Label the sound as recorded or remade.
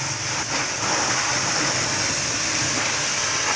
recorded